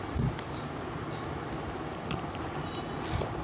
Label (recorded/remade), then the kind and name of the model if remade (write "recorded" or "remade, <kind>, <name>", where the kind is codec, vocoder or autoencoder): recorded